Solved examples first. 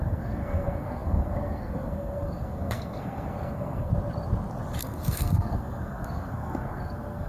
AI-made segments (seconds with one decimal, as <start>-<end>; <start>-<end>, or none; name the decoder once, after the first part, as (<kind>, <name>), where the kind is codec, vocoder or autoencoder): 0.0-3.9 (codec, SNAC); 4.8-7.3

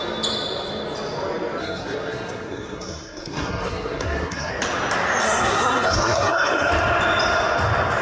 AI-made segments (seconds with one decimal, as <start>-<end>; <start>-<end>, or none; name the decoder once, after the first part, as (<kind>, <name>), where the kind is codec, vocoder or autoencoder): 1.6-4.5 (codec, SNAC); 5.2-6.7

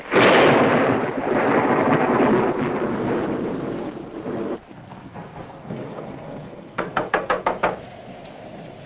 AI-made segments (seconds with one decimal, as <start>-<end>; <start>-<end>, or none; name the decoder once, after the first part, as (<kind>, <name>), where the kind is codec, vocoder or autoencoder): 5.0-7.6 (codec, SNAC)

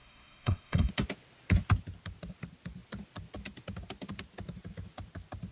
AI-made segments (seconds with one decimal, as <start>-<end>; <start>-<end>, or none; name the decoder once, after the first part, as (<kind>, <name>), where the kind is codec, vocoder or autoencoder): 0.0-0.9 (codec, SNAC)

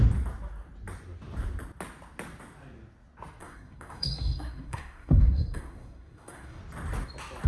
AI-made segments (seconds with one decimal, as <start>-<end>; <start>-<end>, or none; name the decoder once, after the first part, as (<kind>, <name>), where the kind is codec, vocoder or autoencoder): 3.4-6.6 (codec, SNAC)